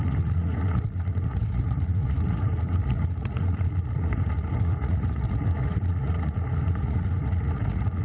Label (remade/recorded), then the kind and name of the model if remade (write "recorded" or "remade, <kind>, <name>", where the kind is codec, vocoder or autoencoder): remade, vocoder, Vocos